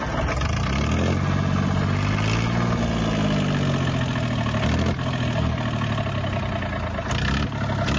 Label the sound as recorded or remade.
recorded